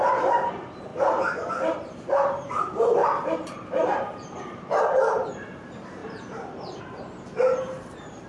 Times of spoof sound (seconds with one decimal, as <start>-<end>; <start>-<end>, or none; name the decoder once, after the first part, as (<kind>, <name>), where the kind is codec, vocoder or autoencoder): 0.0-0.9 (vocoder, BigVGAN v2); 1.5-8.3